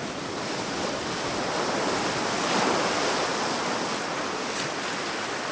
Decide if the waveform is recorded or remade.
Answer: recorded